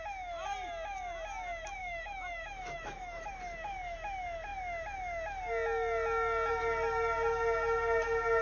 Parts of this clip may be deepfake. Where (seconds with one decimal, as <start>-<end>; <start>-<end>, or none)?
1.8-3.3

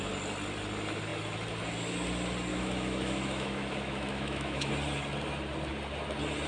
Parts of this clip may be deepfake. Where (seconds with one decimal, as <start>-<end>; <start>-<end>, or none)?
2.5-4.7

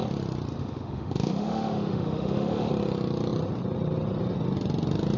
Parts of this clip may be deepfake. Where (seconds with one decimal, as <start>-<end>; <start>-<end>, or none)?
0.6-2.7

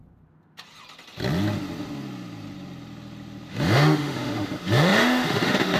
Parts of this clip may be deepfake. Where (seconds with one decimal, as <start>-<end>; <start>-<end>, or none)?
3.5-5.8

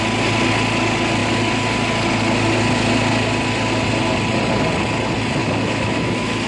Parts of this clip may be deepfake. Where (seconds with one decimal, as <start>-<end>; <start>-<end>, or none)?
5.4-6.5

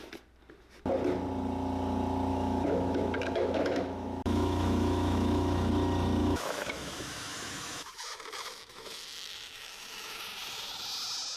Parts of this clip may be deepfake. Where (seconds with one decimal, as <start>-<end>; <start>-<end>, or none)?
2.3-5.7; 6.2-10.2